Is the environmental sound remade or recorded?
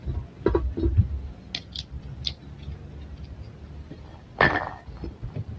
recorded